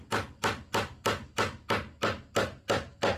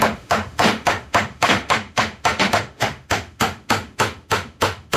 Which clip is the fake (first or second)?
second